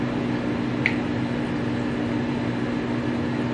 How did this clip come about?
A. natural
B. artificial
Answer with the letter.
A